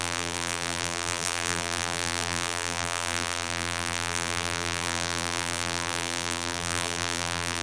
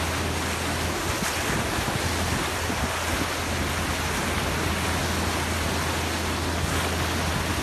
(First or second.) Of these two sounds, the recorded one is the second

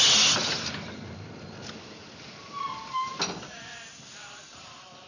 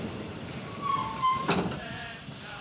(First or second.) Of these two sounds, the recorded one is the first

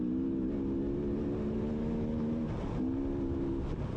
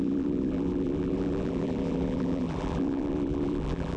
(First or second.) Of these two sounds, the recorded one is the first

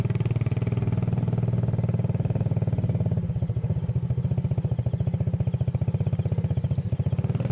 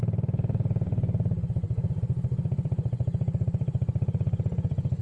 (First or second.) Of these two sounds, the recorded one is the first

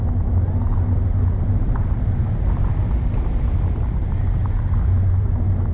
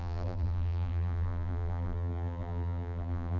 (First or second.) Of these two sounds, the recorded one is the first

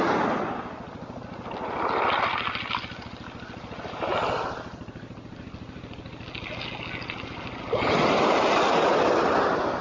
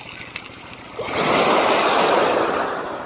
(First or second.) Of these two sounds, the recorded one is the first